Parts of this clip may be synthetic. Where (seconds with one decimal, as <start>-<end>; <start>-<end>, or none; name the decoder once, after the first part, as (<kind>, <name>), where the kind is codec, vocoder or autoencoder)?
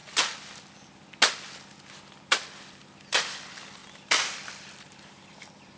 2.8-5.8 (vocoder, BigVGAN v2)